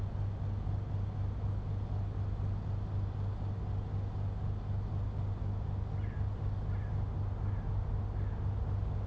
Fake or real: real